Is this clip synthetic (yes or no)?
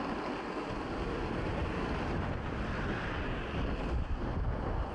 no